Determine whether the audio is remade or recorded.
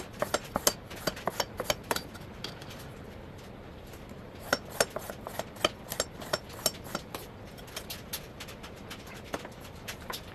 recorded